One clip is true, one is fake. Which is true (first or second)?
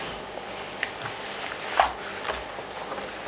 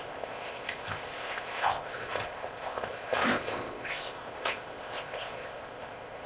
first